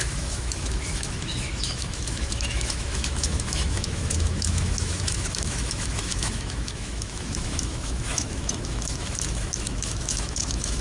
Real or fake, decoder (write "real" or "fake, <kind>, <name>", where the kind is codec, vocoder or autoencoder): fake, autoencoder, DAC-VAE